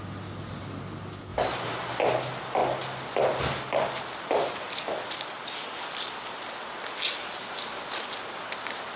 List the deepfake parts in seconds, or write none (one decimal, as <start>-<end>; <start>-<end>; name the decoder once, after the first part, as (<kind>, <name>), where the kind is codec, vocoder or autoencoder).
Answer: none